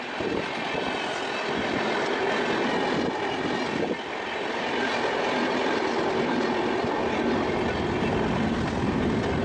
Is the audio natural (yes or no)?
yes